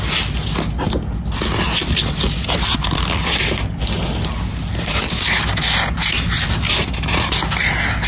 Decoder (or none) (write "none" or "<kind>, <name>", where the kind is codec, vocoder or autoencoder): none